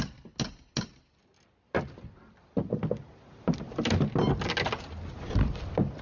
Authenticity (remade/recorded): recorded